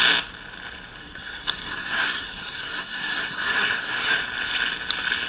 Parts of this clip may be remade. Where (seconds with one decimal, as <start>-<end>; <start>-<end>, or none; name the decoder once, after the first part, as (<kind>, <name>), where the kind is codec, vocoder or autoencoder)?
1.0-4.2 (codec, SNAC)